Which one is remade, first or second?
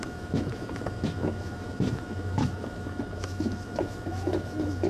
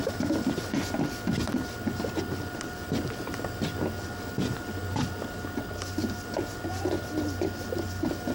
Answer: first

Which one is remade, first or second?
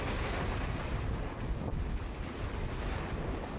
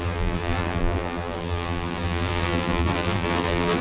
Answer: second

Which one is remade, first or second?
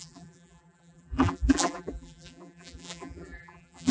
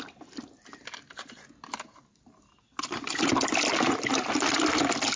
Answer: first